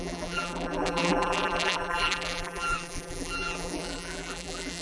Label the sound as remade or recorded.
remade